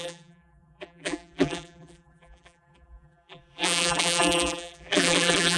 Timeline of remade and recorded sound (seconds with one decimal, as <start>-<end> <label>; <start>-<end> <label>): 0.0-5.6 remade